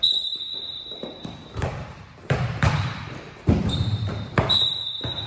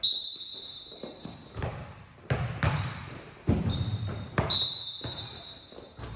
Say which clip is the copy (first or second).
first